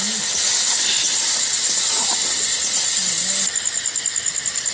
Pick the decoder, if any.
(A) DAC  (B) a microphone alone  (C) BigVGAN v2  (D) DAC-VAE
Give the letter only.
B